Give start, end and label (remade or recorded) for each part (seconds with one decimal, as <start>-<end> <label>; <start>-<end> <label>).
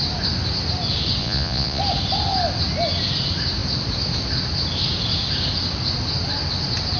0.0-1.2 recorded; 1.2-1.8 remade; 1.8-7.0 recorded